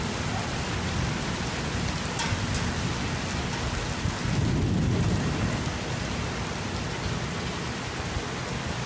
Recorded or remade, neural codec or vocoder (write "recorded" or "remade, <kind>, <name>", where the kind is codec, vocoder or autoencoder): recorded